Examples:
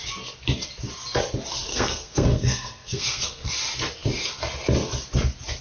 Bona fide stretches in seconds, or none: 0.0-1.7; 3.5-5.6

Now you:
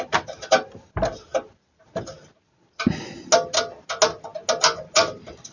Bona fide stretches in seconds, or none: 0.0-5.5

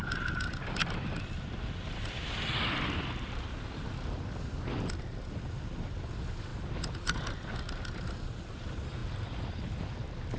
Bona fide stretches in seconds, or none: 0.0-10.4